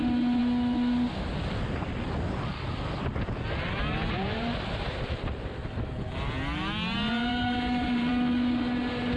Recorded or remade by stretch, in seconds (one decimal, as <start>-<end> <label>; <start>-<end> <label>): 0.0-3.8 recorded; 3.8-5.3 remade; 5.3-7.3 recorded; 7.3-8.1 remade; 8.1-9.2 recorded